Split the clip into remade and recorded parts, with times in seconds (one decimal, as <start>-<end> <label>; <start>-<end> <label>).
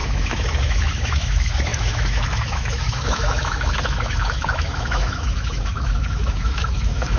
0.0-7.2 remade